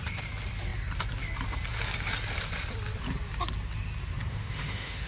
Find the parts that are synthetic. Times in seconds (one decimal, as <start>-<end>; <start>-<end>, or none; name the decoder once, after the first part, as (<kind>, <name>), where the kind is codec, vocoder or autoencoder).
4.3-5.1 (autoencoder, DAC-VAE)